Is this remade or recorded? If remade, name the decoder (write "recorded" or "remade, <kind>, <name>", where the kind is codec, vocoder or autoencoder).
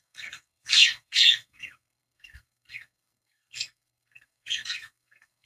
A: remade, codec, SNAC